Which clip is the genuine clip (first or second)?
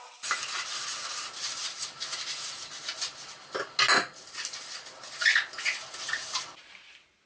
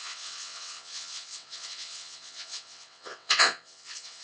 first